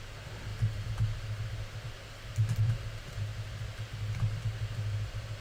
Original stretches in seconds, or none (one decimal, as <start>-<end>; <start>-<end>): 0.0-5.4